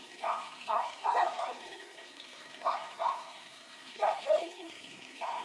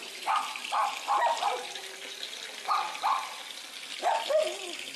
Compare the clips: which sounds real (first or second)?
second